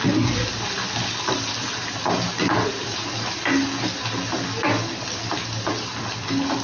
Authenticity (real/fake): real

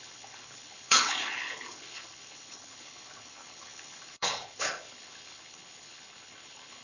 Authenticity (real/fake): fake